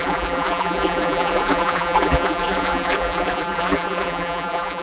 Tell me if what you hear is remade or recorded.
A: remade